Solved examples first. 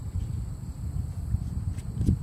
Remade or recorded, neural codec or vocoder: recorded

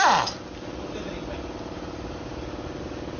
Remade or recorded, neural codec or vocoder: recorded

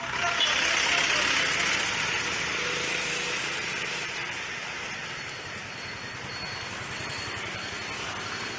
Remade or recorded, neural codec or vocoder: recorded